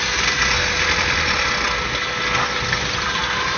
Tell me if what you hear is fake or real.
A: real